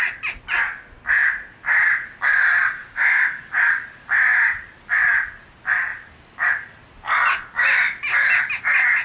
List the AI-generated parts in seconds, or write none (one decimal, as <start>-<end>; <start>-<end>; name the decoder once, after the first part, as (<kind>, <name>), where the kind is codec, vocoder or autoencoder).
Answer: 2.8-3.7 (codec, DAC)